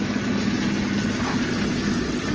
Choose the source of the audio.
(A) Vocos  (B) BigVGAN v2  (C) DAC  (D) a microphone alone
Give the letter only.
D